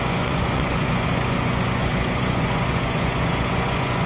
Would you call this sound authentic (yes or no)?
no